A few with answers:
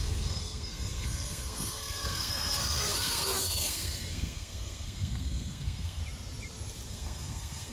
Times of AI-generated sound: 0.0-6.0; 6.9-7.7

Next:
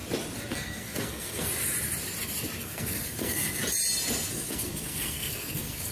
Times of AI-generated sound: 0.5-1.5; 2.6-3.6; 4.3-5.9

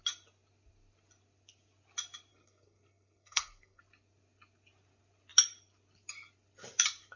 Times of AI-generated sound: 2.3-3.8

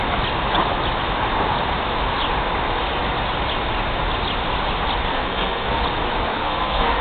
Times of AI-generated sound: 5.1-5.8; 6.3-7.0

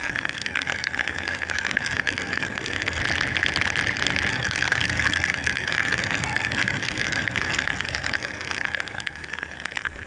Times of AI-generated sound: 0.0-3.0; 4.3-10.1